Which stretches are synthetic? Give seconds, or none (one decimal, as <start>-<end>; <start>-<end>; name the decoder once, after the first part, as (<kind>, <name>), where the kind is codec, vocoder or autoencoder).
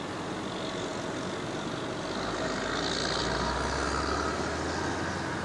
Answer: none